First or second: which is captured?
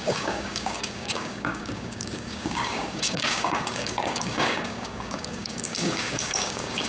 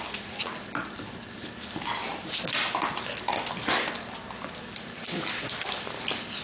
second